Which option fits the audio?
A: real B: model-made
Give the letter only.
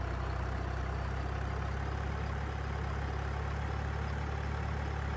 A